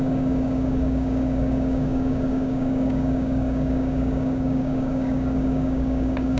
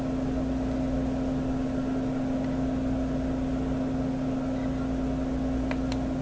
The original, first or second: second